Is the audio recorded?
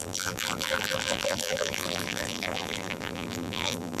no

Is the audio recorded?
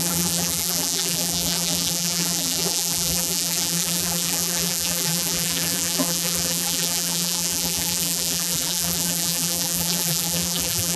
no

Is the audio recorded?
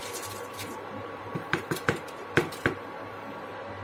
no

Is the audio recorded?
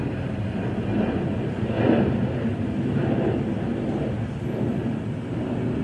yes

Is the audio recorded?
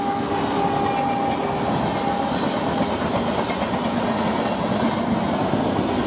yes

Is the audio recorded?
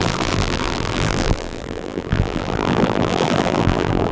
no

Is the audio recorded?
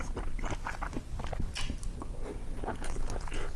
yes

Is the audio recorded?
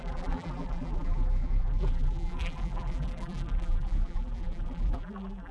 no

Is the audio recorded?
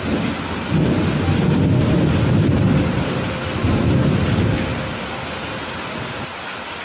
yes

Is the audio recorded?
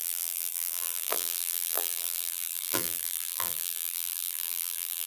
no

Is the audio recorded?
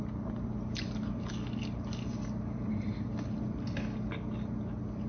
yes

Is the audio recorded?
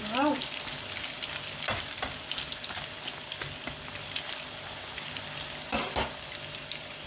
yes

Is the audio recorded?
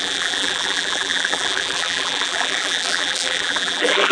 no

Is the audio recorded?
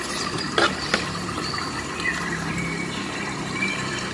no